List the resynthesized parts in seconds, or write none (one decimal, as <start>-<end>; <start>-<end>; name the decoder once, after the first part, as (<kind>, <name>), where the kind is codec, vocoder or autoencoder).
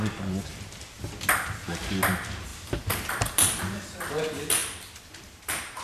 2.5-3.6 (vocoder, BigVGAN v2); 4.6-5.8